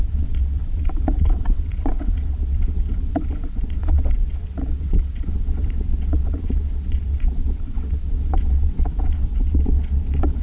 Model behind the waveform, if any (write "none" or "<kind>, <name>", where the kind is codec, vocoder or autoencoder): vocoder, WaveNeXt